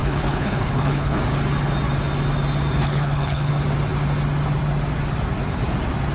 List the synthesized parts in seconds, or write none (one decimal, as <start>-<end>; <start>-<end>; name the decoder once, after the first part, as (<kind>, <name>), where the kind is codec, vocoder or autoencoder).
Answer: 0.0-1.2 (codec, HILCodec); 2.8-3.5